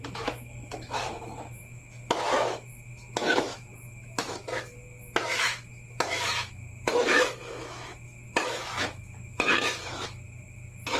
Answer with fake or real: fake